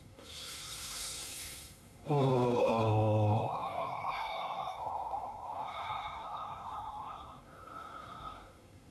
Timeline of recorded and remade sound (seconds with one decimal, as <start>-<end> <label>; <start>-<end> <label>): 0.0-8.9 remade